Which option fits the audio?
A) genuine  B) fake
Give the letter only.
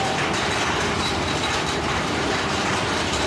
B